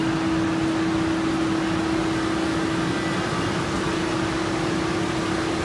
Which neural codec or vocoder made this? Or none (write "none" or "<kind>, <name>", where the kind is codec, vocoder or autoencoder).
none